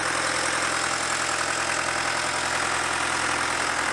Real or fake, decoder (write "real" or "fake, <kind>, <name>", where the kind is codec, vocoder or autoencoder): real